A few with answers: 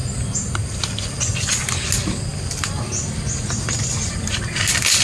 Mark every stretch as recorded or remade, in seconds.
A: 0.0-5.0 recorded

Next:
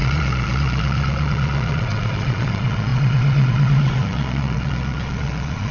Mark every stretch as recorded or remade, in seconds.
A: 0.0-5.7 remade